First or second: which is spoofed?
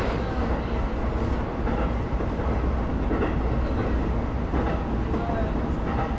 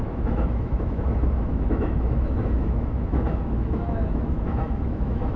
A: second